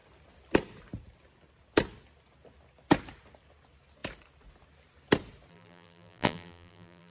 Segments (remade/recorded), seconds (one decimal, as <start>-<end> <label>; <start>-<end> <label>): 0.0-5.5 recorded; 5.5-7.1 remade